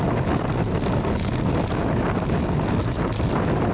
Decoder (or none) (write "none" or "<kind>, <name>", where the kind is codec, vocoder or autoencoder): none